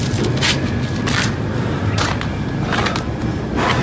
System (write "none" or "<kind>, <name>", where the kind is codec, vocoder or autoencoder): none